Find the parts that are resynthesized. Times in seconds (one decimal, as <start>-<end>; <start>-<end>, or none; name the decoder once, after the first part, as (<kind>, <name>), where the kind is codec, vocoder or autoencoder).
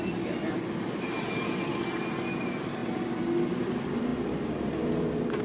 none